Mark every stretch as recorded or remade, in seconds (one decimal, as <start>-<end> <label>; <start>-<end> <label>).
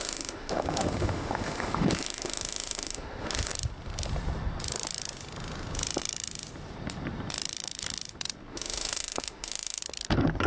0.0-3.5 remade; 3.5-8.5 recorded; 8.5-9.8 remade; 9.8-10.5 recorded